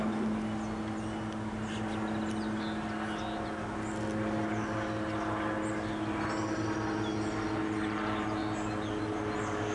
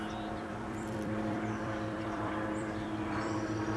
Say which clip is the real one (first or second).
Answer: first